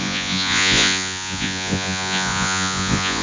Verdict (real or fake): fake